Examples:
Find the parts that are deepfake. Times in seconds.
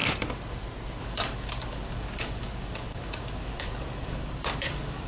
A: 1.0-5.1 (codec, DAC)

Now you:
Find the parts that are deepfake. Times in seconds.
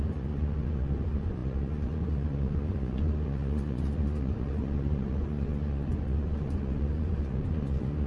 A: 0.0-8.1 (vocoder, Vocos)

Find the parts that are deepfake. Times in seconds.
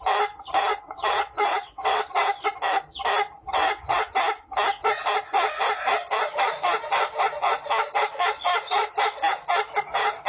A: 0.7-2.0 (vocoder, WaveNeXt); 3.4-4.1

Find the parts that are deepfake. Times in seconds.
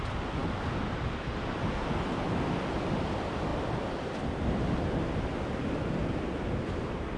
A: none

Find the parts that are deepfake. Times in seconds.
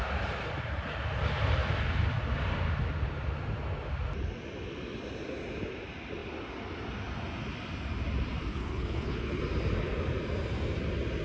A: 8.5-9.4 (codec, HILCodec)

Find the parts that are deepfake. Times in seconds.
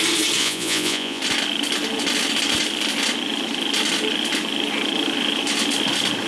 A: 0.4-1.2 (vocoder, Vocos)